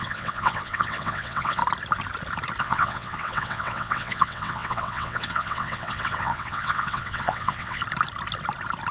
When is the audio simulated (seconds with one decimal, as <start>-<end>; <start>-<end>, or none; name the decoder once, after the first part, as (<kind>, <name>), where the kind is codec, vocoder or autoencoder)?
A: 0.0-1.6 (vocoder, WaveNeXt); 2.6-7.8

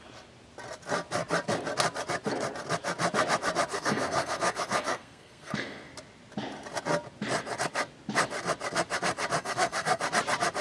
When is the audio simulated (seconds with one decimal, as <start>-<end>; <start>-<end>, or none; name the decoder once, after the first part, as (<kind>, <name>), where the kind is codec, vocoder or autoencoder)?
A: 3.7-5.9 (codec, SNAC); 9.4-10.0

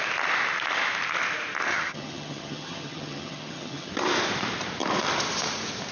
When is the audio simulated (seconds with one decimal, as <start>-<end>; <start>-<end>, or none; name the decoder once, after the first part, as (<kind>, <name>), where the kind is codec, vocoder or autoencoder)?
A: 1.7-3.9 (vocoder, HiFi-GAN)

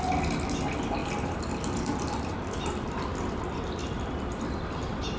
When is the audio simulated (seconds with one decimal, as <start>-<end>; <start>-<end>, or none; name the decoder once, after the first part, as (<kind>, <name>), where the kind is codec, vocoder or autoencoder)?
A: none

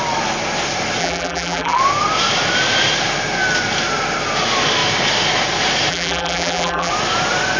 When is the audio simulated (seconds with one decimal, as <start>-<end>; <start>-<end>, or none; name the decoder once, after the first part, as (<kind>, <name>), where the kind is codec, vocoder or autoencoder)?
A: 1.0-1.8 (vocoder, BigVGAN v2); 5.9-6.9